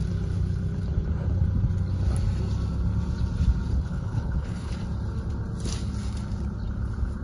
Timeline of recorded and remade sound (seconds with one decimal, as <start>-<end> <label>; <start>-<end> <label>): 0.0-3.7 recorded; 3.7-4.7 remade; 4.7-7.2 recorded